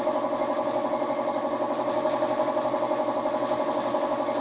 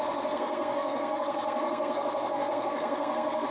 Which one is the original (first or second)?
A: first